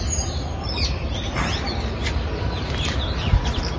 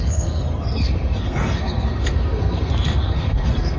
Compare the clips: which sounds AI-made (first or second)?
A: second